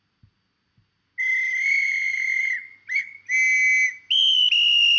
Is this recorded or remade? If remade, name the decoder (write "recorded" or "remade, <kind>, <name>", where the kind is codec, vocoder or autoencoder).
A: recorded